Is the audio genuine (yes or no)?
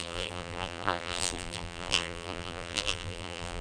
no